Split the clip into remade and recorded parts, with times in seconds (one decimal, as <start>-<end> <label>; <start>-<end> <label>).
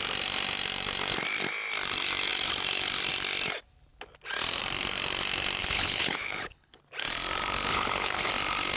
0.0-5.6 recorded; 5.6-6.8 remade; 6.8-7.7 recorded; 7.7-8.3 remade; 8.3-8.8 recorded